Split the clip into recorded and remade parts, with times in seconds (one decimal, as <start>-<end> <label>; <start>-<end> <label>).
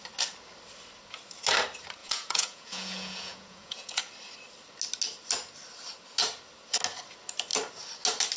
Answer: 0.0-2.0 recorded; 2.0-4.0 remade; 4.0-8.4 recorded